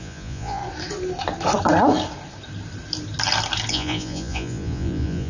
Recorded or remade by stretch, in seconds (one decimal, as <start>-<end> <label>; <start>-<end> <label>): 0.0-0.6 remade; 0.6-3.7 recorded; 3.7-5.3 remade